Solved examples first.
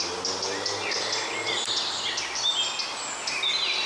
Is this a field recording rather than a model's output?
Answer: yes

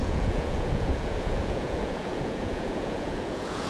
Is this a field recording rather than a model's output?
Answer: no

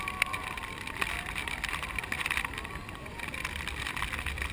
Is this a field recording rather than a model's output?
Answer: no